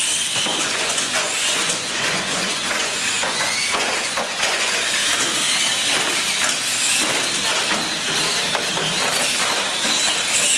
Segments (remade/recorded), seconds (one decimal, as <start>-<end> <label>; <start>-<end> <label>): 0.0-0.5 recorded; 0.5-4.9 remade; 4.9-10.6 recorded